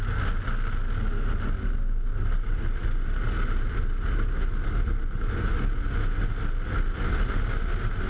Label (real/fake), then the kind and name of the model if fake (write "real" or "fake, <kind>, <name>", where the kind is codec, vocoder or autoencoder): real